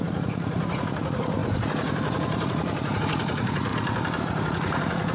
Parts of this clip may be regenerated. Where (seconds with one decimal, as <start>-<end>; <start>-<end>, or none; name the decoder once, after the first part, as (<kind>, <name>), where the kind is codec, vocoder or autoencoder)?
0.0-3.7 (vocoder, Vocos); 4.2-5.1